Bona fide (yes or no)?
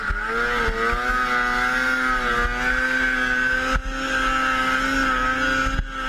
yes